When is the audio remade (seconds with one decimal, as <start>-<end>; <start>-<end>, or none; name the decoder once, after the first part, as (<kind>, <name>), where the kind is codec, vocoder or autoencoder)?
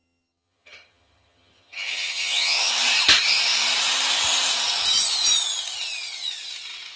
0.0-2.7 (vocoder, HiFi-GAN)